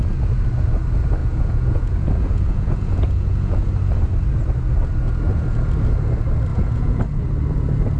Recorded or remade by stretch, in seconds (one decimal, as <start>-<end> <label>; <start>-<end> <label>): 0.0-1.2 recorded; 1.2-3.7 remade; 3.7-6.5 recorded; 6.5-7.0 remade; 7.0-8.0 recorded